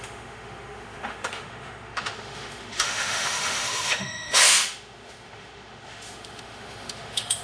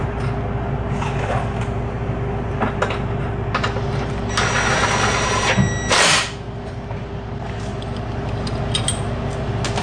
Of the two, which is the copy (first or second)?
first